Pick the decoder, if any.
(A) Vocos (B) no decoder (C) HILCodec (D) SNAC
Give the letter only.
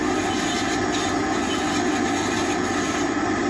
B